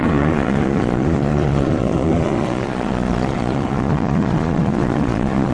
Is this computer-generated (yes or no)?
yes